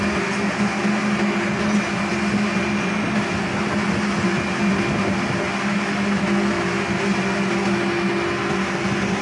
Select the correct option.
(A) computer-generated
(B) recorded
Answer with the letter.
B